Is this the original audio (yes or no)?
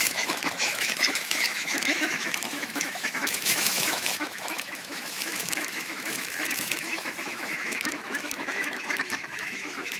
no